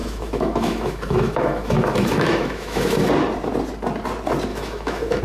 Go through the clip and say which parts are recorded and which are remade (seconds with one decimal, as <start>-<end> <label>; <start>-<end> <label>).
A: 0.0-3.1 remade; 3.1-4.5 recorded; 4.5-5.2 remade